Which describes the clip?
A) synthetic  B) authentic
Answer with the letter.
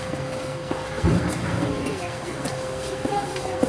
A